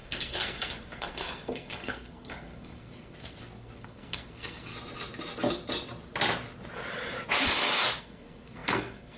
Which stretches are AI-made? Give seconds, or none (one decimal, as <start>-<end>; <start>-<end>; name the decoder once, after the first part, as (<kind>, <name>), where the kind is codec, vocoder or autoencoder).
0.0-4.7 (codec, SNAC); 8.0-9.2